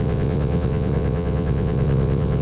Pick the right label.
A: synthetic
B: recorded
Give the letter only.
A